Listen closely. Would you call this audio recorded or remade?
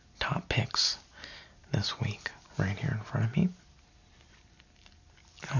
recorded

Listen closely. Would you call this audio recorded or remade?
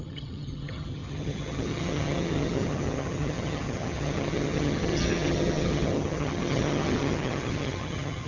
remade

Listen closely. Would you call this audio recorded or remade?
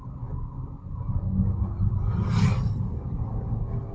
recorded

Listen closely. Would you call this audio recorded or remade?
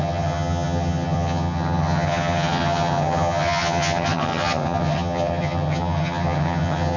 remade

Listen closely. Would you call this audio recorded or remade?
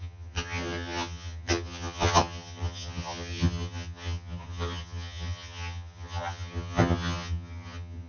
remade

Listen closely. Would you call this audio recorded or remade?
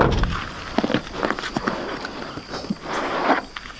recorded